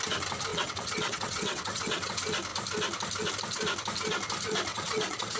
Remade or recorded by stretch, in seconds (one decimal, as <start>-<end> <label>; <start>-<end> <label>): 0.0-0.5 recorded; 0.5-2.1 remade; 2.1-4.7 recorded; 4.7-5.4 remade